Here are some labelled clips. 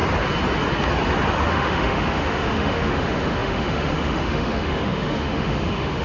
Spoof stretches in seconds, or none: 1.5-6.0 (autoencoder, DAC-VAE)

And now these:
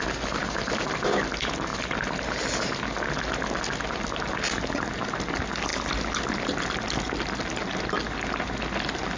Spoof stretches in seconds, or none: none

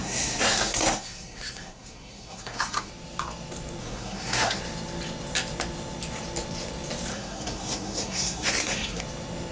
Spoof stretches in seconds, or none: 0.0-2.9 (codec, SNAC); 3.8-4.6; 7.1-9.0